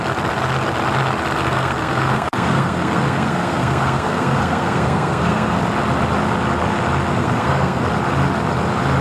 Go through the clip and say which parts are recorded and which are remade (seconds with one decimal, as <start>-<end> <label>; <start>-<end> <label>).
0.0-1.4 recorded; 1.4-5.6 remade; 5.6-7.1 recorded; 7.1-7.8 remade; 7.8-9.0 recorded